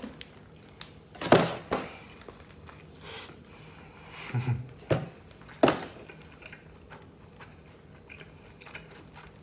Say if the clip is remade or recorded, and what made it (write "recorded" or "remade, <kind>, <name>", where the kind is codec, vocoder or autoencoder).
recorded